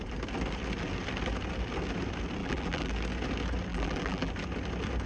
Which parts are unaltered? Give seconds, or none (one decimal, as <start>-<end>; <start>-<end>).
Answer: 0.0-2.4; 2.9-3.7; 4.3-5.1